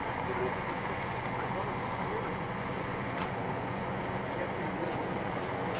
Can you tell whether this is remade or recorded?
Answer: remade